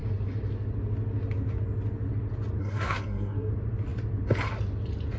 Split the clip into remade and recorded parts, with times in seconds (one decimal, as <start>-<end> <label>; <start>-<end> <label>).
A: 0.0-2.6 recorded; 2.6-3.5 remade; 3.5-5.2 recorded